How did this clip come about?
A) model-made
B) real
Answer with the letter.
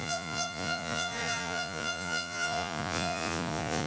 A